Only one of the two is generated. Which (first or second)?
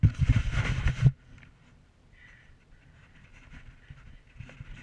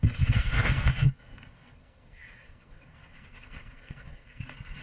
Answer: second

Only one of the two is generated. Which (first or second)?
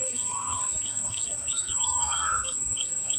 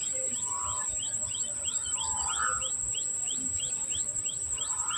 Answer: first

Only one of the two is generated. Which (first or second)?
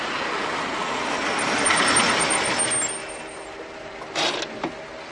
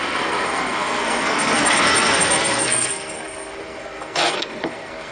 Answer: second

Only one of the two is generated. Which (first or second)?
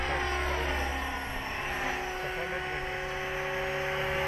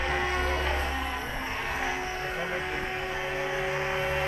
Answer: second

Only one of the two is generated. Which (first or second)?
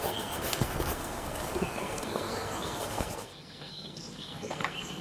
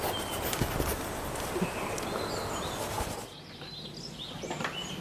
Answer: first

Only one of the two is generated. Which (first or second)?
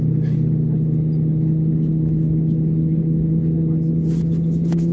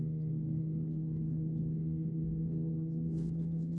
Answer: second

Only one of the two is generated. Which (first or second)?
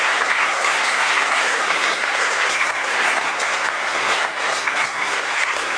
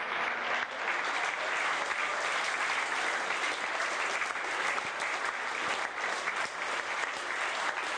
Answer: first